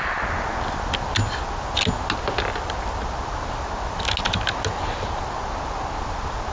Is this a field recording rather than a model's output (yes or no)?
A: yes